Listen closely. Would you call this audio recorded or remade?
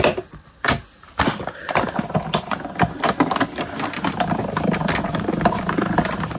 recorded